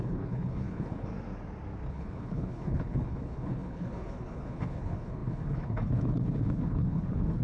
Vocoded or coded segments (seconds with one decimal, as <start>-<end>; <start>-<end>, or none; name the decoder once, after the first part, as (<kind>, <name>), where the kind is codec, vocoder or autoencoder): 0.0-1.1 (codec, HILCodec); 1.9-7.4

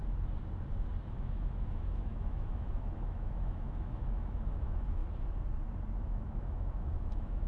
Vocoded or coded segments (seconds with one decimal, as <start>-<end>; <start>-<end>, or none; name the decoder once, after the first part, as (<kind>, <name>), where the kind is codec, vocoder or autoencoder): 1.1-5.0 (autoencoder, DAC-VAE); 6.0-7.5

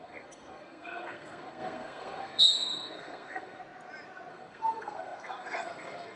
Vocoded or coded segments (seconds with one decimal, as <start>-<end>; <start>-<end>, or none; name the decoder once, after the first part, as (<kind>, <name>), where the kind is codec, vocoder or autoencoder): 0.0-3.6 (codec, SNAC); 4.3-6.2

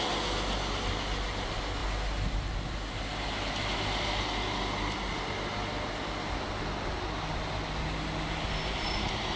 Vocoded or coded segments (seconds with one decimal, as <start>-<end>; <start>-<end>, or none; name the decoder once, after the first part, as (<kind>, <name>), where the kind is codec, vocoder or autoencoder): none

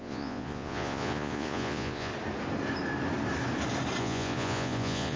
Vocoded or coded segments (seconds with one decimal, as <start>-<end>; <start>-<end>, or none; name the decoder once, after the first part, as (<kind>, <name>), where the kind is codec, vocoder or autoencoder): 0.0-2.1 (vocoder, Vocos); 4.0-5.2

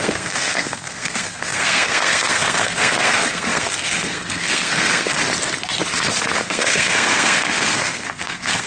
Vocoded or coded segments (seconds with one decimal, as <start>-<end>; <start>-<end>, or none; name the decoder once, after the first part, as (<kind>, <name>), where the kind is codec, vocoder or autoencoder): 0.0-5.2 (codec, SNAC); 6.4-8.7

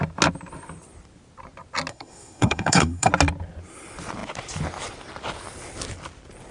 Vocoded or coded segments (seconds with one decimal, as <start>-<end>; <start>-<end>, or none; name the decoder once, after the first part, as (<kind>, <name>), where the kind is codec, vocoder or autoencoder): 1.9-3.1 (codec, SNAC)